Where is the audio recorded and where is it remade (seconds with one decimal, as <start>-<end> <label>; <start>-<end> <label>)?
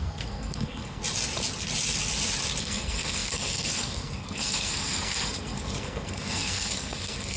0.0-1.0 remade; 1.0-2.6 recorded; 2.6-7.4 remade